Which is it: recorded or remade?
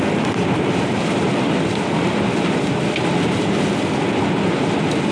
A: recorded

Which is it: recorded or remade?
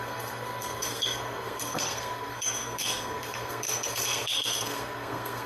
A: remade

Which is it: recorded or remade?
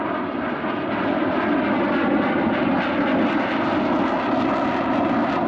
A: recorded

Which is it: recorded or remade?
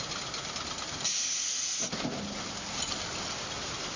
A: recorded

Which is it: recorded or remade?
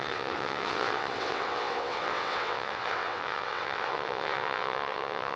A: remade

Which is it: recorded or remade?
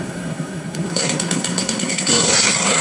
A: remade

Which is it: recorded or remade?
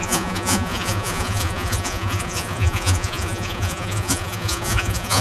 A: remade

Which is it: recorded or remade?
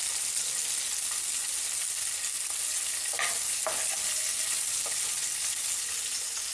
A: recorded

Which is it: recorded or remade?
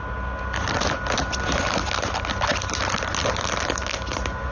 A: recorded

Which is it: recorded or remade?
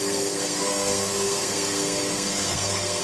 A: remade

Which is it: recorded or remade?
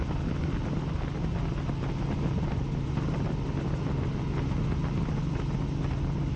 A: recorded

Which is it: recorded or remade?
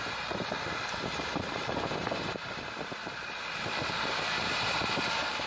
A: remade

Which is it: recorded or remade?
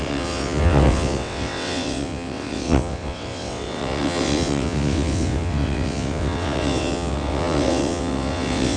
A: remade